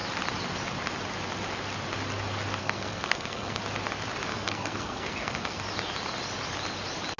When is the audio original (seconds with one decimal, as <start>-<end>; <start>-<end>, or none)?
0.0-2.6; 3.6-4.3; 5.6-7.2